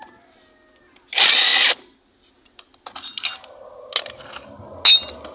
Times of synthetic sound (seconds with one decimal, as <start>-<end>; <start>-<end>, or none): none